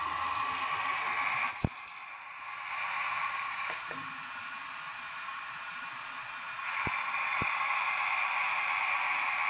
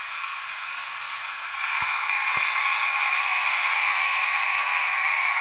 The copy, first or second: second